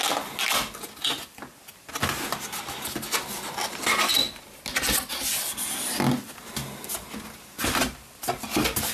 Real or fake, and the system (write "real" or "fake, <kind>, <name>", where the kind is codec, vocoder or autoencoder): real